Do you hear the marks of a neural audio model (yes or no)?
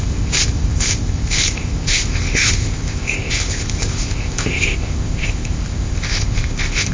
yes